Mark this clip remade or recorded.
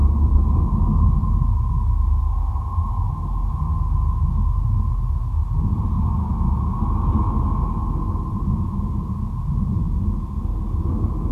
recorded